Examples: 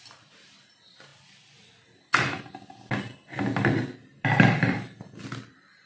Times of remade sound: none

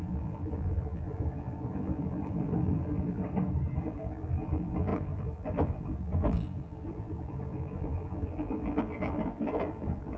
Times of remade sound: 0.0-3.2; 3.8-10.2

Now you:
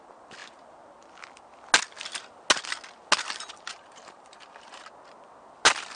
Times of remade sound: 3.7-4.9